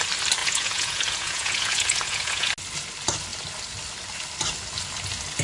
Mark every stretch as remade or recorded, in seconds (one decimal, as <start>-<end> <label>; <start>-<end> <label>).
0.0-0.4 recorded; 0.4-2.5 remade; 2.5-5.4 recorded